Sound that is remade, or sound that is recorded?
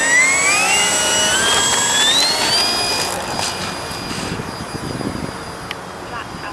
recorded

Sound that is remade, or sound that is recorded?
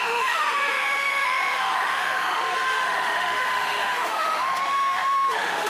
remade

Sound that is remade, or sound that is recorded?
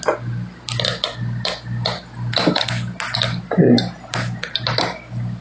recorded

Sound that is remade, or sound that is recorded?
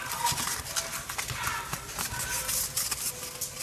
recorded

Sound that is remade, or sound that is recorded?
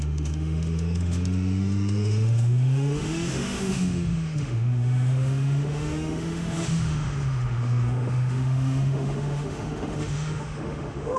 remade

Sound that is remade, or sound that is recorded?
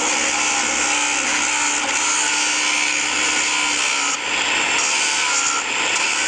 recorded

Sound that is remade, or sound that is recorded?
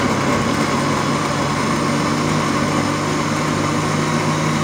recorded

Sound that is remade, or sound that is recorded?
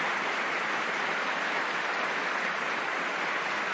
recorded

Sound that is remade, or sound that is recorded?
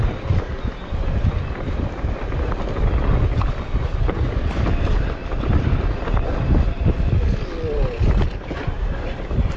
recorded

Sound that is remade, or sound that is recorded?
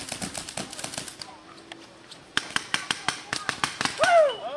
recorded